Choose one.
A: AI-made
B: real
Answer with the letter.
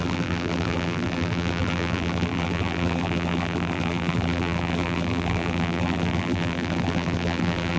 A